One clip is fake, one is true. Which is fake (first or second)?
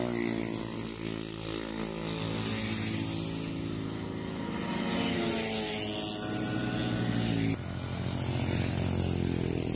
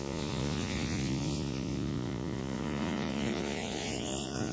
second